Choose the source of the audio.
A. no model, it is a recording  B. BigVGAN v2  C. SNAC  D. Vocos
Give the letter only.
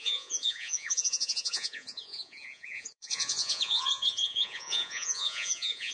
D